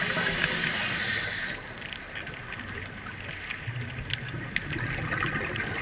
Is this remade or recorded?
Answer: recorded